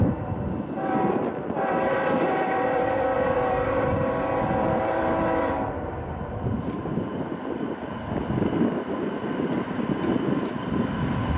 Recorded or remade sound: remade